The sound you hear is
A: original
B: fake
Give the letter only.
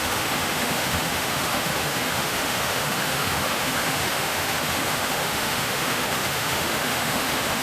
B